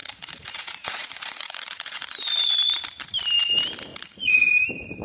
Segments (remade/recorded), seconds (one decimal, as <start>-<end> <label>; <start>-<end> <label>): 0.0-3.0 remade; 3.0-3.9 recorded; 3.9-4.5 remade; 4.5-5.0 recorded

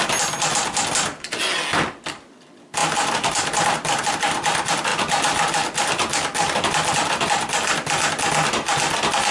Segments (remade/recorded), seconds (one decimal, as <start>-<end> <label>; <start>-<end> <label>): 0.0-2.8 recorded; 2.8-4.1 remade; 4.1-4.9 recorded; 4.9-6.9 remade; 6.9-9.3 recorded

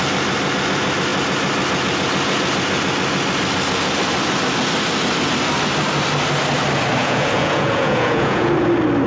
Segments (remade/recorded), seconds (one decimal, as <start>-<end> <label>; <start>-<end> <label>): 0.0-7.0 recorded; 7.0-8.5 remade; 8.5-9.1 recorded